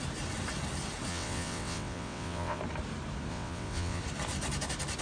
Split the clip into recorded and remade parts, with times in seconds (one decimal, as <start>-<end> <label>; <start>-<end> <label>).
0.0-1.1 recorded; 1.1-2.6 remade; 2.6-3.3 recorded; 3.3-4.0 remade; 4.0-5.0 recorded